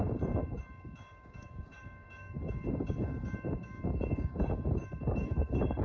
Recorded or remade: remade